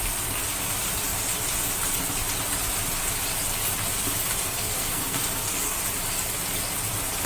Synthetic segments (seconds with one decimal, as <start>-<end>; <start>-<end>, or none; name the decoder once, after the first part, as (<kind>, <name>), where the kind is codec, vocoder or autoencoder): 4.4-5.8 (codec, SNAC)

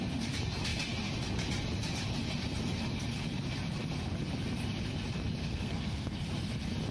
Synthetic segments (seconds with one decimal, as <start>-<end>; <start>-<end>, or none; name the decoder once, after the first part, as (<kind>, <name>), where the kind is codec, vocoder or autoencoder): 5.4-6.2 (codec, SNAC)

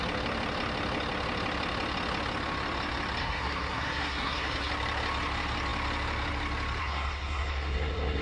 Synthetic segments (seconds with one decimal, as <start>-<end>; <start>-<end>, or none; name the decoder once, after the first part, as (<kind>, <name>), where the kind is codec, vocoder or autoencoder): 3.2-4.7 (codec, SNAC); 6.8-8.2

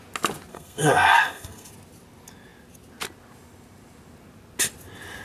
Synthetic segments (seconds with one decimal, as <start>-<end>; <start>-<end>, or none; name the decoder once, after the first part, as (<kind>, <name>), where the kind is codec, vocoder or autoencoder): 0.5-1.7 (codec, SNAC)

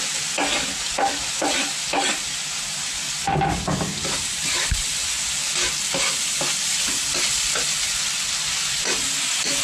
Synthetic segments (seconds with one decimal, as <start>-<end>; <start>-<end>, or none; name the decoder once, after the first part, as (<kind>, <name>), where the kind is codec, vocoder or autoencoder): none

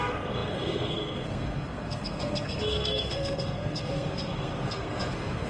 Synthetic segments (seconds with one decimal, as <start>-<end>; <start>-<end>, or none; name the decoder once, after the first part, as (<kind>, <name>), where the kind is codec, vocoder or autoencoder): 0.0-5.5 (codec, SNAC)

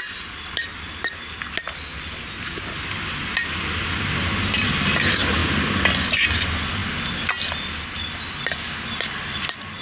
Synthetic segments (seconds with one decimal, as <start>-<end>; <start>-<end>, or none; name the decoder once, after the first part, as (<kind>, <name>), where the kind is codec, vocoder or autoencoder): none